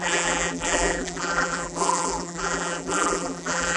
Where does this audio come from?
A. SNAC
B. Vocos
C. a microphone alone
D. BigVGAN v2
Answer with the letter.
D